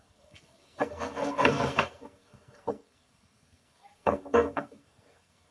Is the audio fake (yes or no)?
yes